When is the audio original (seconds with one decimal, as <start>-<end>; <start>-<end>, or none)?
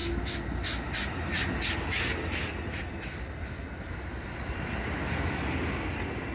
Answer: 0.0-6.3